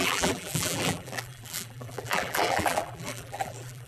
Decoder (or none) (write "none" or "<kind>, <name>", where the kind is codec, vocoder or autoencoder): vocoder, BigVGAN v2